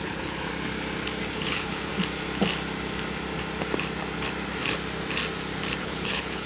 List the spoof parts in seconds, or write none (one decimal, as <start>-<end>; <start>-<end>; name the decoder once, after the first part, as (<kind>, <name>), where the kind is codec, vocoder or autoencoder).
0.0-0.5 (codec, HILCodec); 1.3-1.9; 5.8-6.5